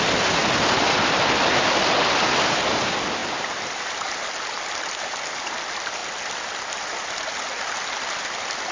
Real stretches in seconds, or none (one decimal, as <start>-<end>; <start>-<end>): 0.0-8.7